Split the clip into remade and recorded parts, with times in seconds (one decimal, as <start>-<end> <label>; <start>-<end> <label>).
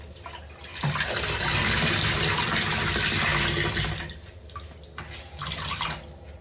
0.0-0.7 recorded; 0.7-2.8 remade; 2.8-6.4 recorded